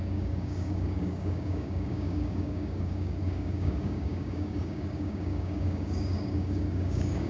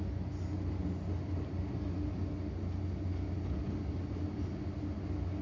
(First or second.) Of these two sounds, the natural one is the second